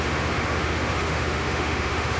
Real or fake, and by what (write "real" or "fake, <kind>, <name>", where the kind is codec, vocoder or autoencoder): fake, autoencoder, DAC-VAE